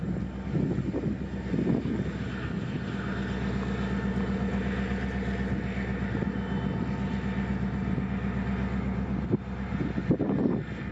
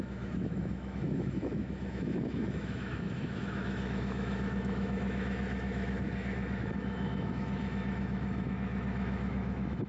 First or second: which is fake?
second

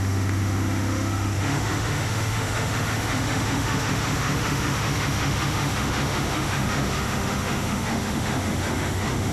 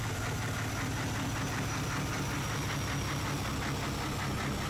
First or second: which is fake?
first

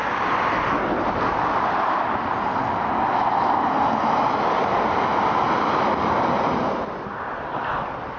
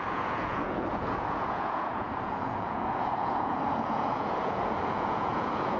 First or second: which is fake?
second